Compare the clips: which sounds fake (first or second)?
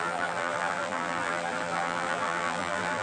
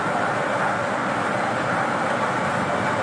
first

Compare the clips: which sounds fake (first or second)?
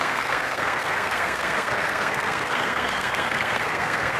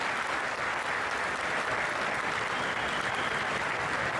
first